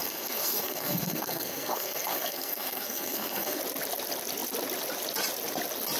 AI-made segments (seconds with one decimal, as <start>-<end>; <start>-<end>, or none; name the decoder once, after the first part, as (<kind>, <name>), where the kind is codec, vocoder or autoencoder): 0.0-3.6 (codec, SNAC)